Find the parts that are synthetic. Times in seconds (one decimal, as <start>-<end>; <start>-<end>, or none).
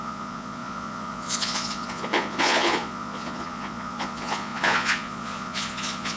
0.0-6.2